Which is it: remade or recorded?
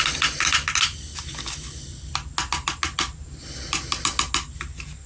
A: recorded